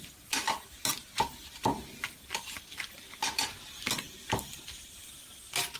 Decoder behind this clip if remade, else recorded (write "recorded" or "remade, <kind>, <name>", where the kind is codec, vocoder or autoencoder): recorded